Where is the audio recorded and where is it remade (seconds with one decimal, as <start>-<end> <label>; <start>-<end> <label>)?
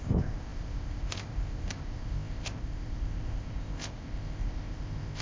0.0-5.2 remade